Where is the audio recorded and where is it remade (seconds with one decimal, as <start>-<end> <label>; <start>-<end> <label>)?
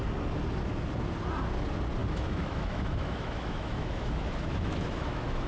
0.0-2.0 recorded; 2.0-5.5 remade